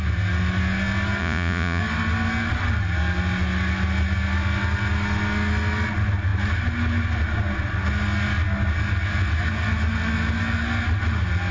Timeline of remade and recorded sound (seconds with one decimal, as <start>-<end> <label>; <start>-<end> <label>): 0.0-1.2 recorded; 1.2-1.8 remade; 1.8-11.5 recorded